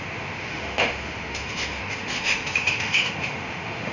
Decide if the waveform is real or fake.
fake